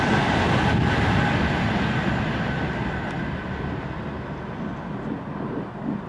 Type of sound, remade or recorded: recorded